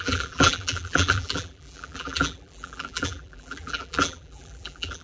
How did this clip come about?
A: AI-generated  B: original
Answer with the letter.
A